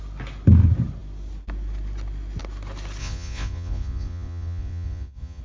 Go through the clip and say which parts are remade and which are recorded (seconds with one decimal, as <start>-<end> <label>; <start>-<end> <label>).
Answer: 0.0-3.0 recorded; 3.0-5.4 remade